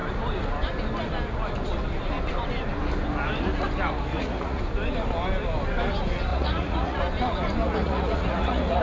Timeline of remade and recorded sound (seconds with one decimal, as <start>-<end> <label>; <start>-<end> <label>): 0.0-4.1 recorded; 4.1-4.6 remade; 4.6-6.3 recorded; 6.3-7.0 remade; 7.0-7.6 recorded; 7.6-8.8 remade